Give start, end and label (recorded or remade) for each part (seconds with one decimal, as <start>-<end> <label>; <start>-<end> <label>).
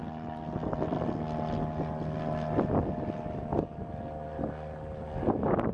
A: 0.0-5.7 recorded